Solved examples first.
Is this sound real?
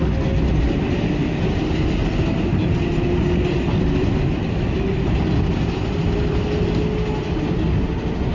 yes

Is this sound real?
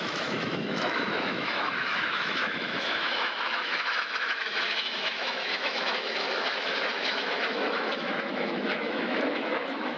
no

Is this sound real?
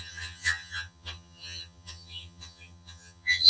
no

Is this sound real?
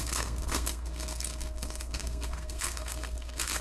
no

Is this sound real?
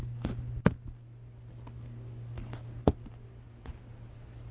yes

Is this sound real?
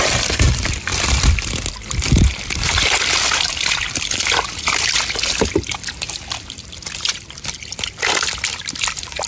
no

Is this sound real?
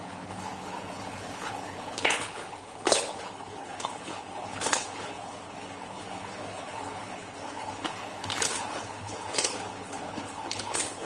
no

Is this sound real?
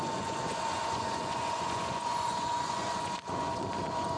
no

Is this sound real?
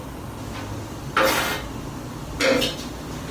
yes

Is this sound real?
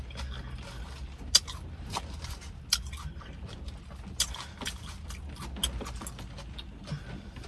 yes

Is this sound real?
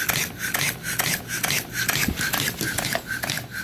yes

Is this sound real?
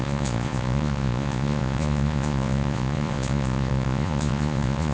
no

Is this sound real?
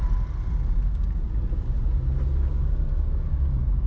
yes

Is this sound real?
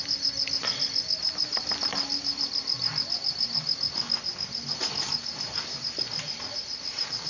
yes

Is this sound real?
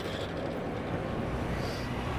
yes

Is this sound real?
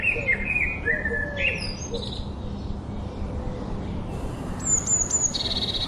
yes